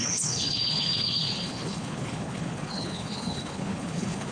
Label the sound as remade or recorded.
remade